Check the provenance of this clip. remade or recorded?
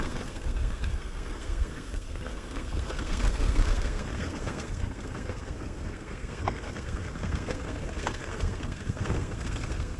remade